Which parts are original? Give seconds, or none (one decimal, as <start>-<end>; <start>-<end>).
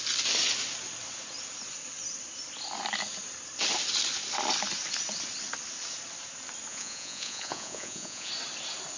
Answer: 0.0-6.7; 8.3-9.0